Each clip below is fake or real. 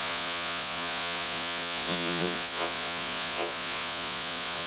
fake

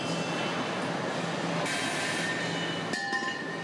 real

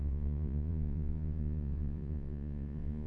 fake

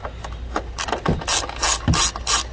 real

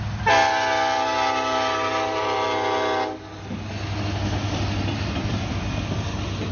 real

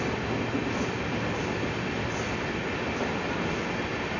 real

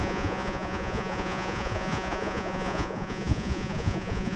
fake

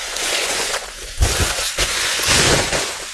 fake